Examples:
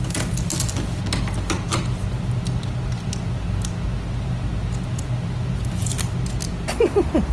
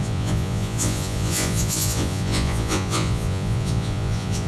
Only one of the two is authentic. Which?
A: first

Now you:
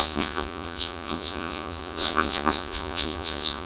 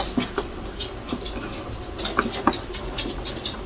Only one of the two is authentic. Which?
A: second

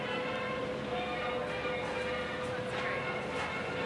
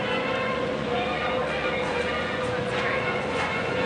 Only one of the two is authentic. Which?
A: first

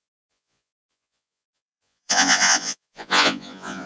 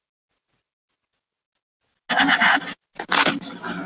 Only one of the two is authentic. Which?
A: second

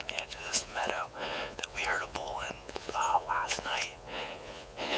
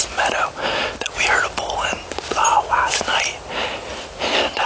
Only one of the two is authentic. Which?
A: second